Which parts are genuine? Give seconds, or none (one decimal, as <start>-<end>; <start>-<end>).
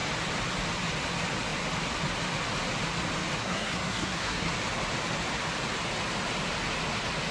0.0-3.4; 4.5-7.3